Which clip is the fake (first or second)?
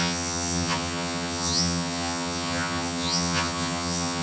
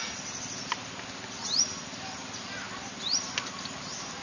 first